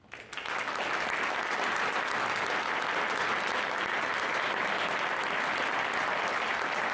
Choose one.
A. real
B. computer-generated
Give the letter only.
A